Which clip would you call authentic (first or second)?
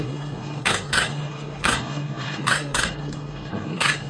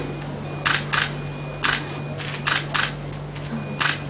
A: second